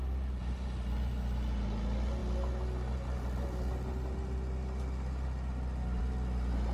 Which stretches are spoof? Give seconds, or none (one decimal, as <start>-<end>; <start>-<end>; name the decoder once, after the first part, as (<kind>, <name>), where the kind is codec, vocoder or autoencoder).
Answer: none